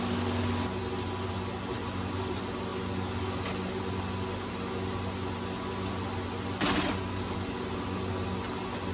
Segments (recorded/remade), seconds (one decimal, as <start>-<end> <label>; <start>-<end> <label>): 0.0-8.9 recorded